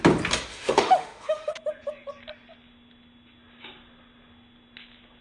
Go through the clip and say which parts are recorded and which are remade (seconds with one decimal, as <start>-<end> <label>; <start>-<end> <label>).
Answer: 0.0-0.5 recorded; 0.5-1.5 remade; 1.5-5.2 recorded